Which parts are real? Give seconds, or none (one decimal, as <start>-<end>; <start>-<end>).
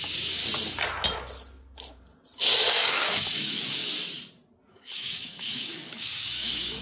0.4-2.7; 3.9-4.7